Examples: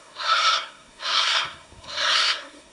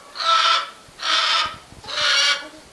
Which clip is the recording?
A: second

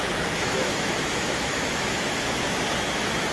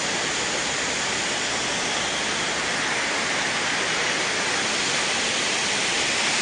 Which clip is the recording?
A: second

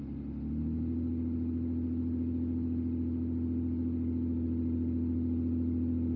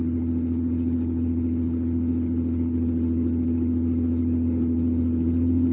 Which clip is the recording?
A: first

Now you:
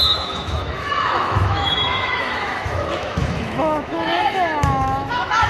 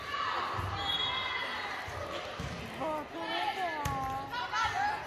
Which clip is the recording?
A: second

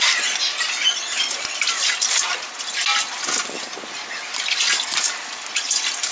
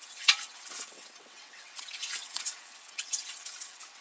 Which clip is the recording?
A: first